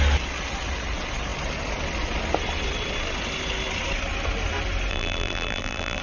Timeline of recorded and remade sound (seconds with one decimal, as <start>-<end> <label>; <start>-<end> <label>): 0.0-4.9 recorded; 4.9-6.0 remade